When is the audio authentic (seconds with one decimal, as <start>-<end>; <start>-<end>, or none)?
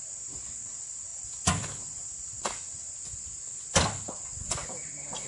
0.0-5.3